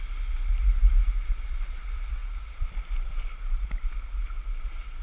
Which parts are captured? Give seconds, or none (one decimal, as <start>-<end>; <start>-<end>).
0.0-5.0